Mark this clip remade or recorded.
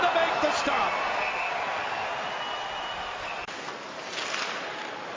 recorded